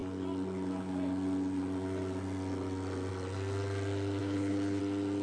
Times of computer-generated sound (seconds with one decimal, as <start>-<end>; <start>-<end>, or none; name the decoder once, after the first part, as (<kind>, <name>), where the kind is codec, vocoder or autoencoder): 4.2-4.8 (codec, HILCodec)